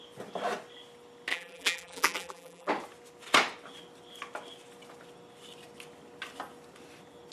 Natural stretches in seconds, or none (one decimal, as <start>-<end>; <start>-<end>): 0.0-1.3; 2.7-7.3